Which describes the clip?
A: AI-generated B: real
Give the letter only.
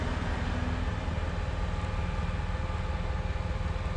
B